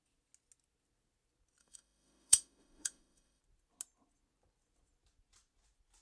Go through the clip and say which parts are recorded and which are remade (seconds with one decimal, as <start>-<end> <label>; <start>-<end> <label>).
0.0-1.6 recorded; 1.6-3.4 remade; 3.4-6.0 recorded